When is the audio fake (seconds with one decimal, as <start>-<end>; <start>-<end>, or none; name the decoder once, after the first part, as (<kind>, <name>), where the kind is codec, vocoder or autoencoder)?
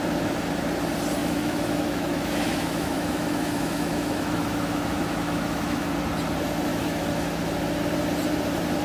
1.2-5.9 (autoencoder, DAC-VAE); 6.7-7.5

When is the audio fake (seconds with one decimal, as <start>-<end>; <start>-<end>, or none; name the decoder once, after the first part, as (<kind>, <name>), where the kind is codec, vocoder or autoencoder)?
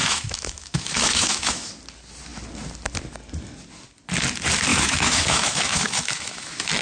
0.0-1.7 (autoencoder, DAC-VAE); 4.7-6.8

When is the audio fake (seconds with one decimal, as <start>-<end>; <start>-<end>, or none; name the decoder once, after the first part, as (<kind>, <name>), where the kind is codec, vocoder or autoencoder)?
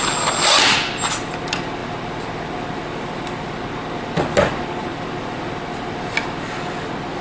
none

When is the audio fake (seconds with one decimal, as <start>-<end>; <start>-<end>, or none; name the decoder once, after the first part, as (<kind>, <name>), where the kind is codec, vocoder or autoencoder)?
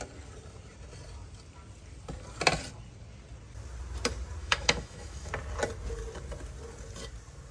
4.4-5.3 (autoencoder, DAC-VAE)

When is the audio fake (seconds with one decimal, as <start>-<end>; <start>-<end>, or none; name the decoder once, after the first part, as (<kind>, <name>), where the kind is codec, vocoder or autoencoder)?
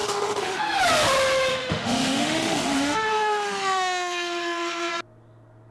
0.0-0.6 (autoencoder, DAC-VAE); 1.5-4.9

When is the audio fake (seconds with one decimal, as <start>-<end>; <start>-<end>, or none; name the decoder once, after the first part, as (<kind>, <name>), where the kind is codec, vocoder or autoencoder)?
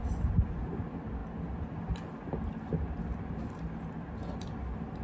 none